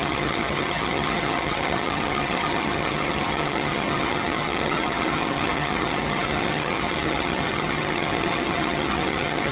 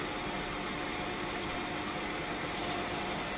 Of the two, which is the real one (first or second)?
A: second